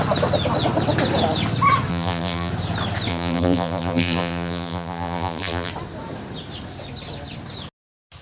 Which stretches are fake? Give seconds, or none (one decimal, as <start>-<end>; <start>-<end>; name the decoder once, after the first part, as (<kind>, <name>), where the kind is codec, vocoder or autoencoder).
1.9-2.5 (vocoder, BigVGAN v2); 3.1-5.7